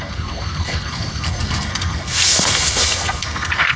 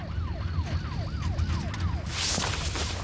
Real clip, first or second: second